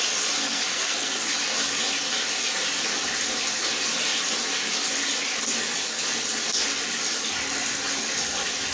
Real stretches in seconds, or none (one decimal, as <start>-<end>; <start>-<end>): 0.0-0.4; 1.3-8.7